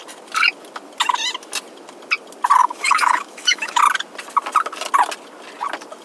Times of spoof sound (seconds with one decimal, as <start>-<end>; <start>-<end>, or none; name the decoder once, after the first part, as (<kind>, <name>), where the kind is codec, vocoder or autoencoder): 2.6-3.8 (autoencoder, DAC-VAE)